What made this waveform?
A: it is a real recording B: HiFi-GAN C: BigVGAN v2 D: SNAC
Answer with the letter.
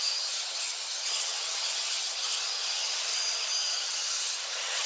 B